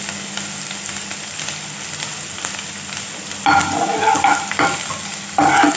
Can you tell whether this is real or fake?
real